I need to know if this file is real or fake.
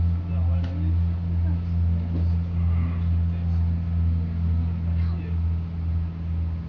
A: real